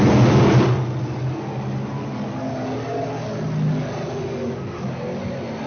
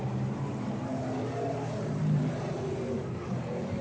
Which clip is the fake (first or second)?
second